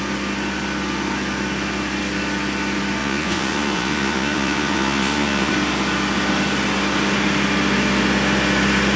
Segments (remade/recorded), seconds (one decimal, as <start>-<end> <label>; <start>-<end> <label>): 0.0-3.0 recorded; 3.0-5.5 remade; 5.5-9.0 recorded

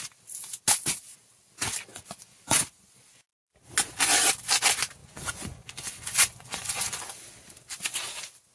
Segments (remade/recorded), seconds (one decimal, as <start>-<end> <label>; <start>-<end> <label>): 0.0-1.9 recorded; 1.9-3.0 remade; 3.0-5.0 recorded; 5.0-7.0 remade; 7.0-8.5 recorded

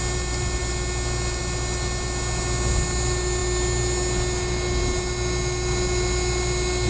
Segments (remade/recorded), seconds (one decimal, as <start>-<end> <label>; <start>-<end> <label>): 0.0-6.9 recorded